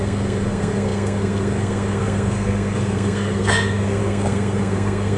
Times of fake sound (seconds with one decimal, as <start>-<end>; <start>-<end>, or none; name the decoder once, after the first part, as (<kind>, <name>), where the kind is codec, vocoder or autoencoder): 0.0-5.2 (codec, SNAC)